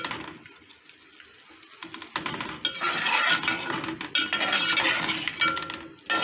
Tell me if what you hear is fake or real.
real